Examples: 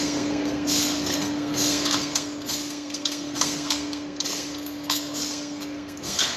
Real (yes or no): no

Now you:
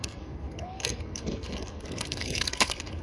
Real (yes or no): no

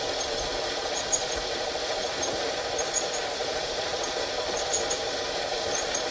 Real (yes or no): yes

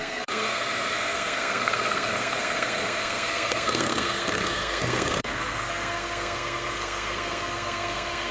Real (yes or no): no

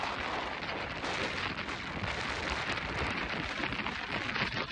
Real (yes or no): yes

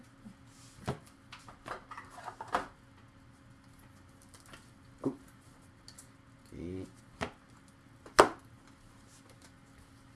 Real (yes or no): yes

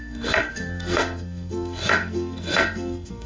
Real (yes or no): no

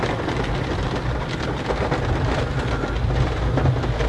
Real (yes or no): yes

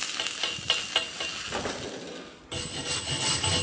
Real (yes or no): yes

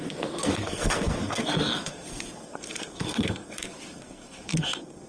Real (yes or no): no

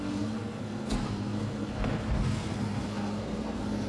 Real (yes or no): no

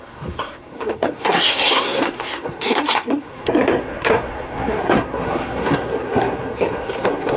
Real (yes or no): no